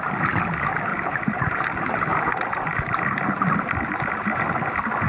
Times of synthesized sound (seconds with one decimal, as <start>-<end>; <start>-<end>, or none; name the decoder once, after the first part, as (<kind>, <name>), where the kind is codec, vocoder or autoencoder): 0.9-1.6 (vocoder, BigVGAN v2)